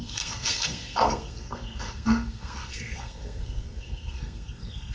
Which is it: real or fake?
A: fake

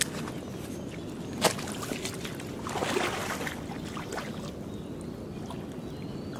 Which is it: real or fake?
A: real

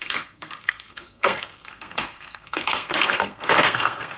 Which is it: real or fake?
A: fake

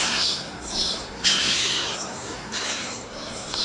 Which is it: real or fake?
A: fake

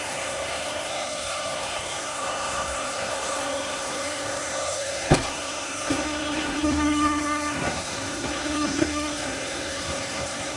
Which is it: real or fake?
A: fake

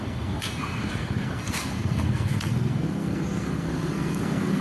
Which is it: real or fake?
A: fake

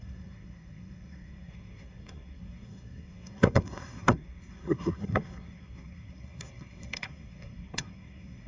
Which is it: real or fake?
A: fake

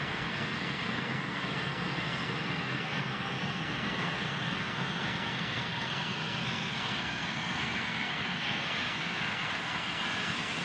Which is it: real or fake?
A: fake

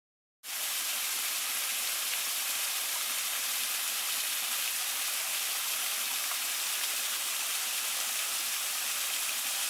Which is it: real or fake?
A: real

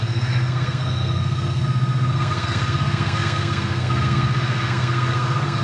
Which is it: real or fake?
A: fake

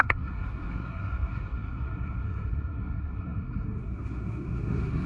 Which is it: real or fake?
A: fake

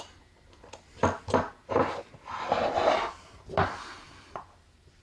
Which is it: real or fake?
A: real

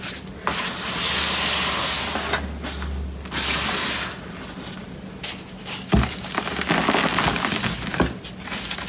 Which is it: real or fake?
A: real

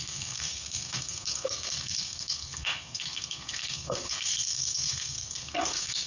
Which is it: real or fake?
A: fake